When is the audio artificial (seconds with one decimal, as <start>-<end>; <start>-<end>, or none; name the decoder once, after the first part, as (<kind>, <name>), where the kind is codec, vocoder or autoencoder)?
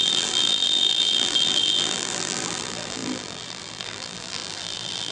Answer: 0.0-5.1 (vocoder, BigVGAN v2)